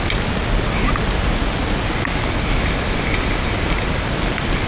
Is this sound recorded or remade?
recorded